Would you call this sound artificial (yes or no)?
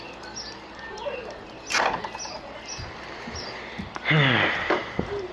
no